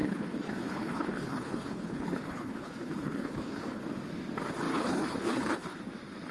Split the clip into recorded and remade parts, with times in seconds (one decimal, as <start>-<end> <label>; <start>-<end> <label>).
0.0-3.8 remade; 3.8-4.7 recorded; 4.7-5.8 remade; 5.8-6.3 recorded